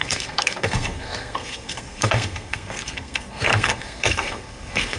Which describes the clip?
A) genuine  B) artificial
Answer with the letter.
B